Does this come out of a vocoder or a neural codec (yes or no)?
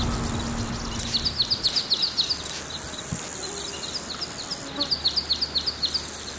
no